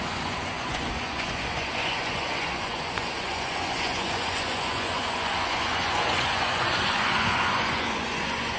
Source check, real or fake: fake